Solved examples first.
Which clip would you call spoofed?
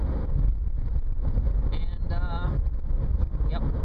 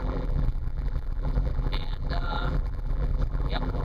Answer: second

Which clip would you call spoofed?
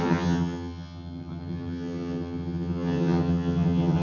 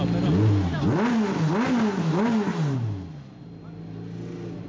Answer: first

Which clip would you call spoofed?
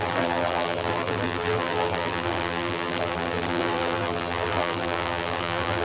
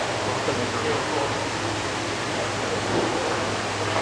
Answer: first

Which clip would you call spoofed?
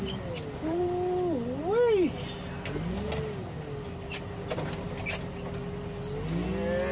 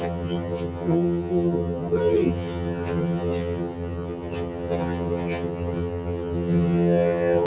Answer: second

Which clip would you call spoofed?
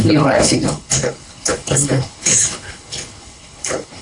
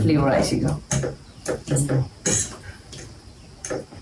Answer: first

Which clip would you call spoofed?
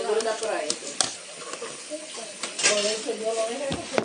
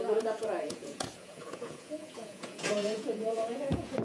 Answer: second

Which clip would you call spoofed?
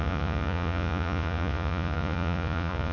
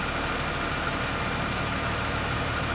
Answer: first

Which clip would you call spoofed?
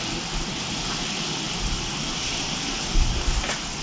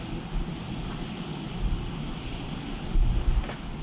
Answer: first